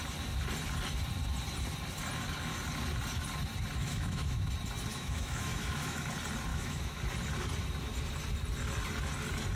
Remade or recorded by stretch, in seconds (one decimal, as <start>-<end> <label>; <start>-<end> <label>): 0.0-3.8 recorded; 3.8-4.5 remade; 4.5-4.9 recorded; 4.9-6.1 remade; 6.1-6.5 recorded; 6.5-7.0 remade; 7.0-9.6 recorded